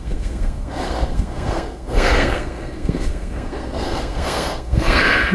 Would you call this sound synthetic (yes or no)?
yes